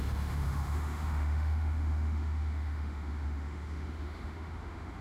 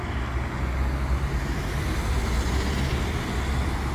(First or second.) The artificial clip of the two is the first